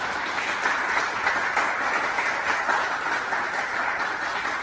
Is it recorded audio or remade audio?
recorded